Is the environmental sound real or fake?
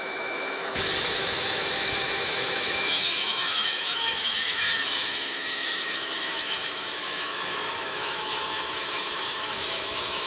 fake